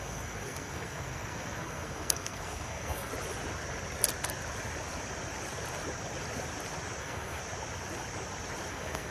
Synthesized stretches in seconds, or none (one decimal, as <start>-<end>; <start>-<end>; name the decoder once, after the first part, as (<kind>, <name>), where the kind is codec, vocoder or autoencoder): 0.0-3.1 (codec, SNAC); 7.0-7.4; 8.7-9.1